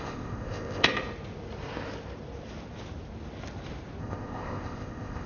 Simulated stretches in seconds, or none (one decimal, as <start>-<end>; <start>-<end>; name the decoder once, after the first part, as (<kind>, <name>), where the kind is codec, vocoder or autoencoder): 0.0-0.9 (codec, ZipCodec); 4.0-5.3